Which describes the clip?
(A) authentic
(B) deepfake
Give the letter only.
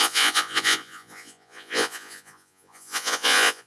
B